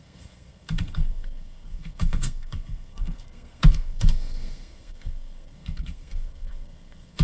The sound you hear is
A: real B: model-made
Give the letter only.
B